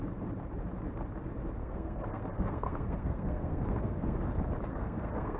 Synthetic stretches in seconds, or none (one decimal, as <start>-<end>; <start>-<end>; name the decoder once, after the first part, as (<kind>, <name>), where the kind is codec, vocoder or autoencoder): 1.6-4.2 (codec, SNAC); 4.7-5.4